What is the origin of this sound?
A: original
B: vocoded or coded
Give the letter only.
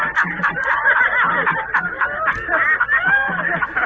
A